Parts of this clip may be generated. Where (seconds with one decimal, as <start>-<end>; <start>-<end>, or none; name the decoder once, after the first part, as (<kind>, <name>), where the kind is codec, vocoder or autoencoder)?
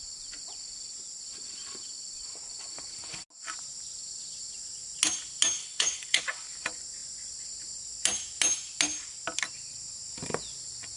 5.6-6.2 (codec, HILCodec)